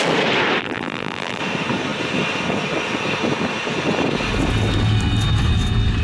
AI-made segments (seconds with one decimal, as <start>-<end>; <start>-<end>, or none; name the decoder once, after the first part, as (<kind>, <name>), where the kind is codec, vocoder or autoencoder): 0.6-1.4 (vocoder, BigVGAN v2)